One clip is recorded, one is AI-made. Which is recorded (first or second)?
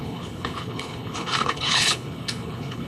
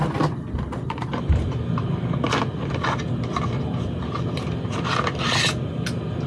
second